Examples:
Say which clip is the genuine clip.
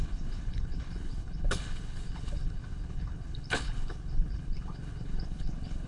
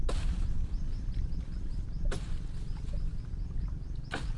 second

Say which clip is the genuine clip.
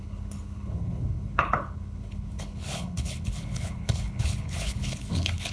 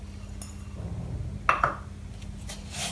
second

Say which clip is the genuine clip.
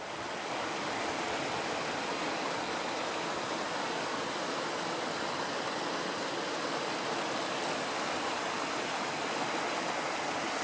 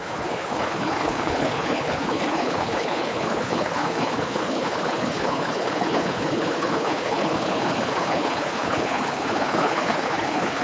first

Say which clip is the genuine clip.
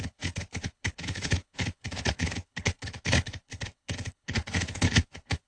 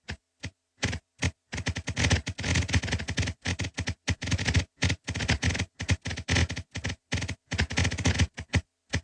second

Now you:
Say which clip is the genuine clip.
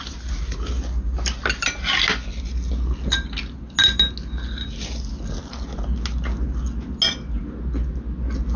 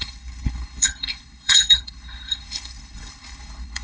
first